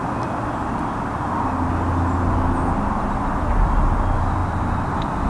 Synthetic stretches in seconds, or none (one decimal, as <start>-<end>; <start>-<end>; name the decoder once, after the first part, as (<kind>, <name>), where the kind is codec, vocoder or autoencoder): 4.4-5.3 (vocoder, BigVGAN v2)